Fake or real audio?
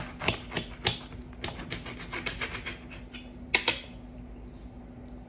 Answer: real